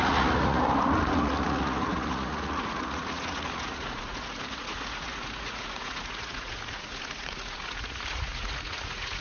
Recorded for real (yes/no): no